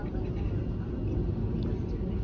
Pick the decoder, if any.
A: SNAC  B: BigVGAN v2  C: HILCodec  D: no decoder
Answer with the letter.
D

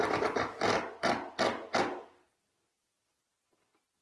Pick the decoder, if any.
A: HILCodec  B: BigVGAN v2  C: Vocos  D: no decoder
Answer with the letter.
D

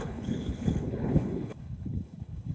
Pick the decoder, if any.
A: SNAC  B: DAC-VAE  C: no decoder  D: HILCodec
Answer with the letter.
D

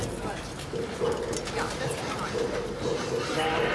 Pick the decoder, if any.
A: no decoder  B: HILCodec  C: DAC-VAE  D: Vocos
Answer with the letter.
A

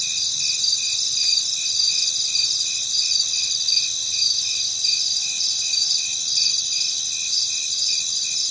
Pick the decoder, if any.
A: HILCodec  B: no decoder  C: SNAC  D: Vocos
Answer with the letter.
B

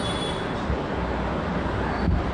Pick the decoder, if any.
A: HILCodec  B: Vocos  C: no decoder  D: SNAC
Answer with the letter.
C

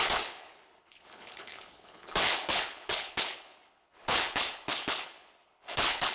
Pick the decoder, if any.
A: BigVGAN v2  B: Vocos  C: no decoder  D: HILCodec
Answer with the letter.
D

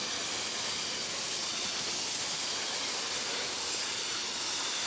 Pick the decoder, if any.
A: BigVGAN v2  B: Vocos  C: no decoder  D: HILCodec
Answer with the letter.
C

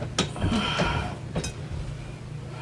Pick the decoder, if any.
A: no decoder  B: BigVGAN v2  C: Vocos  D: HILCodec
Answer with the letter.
A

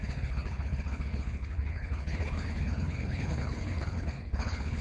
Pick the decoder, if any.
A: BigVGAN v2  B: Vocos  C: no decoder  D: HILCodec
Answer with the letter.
D